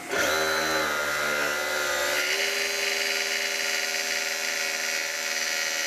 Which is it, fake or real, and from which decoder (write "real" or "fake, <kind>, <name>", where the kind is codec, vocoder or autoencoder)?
real